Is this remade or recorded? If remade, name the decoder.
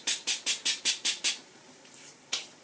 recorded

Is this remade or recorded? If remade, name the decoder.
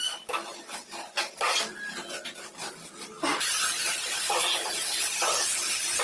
recorded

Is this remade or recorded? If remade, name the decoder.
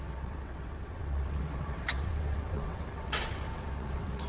remade, vocoder, WaveNeXt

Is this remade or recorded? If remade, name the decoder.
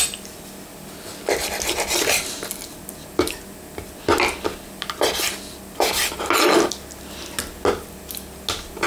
recorded